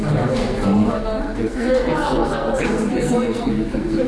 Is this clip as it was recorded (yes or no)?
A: no